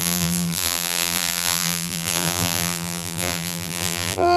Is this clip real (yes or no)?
no